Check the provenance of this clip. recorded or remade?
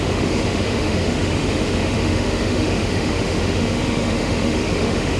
remade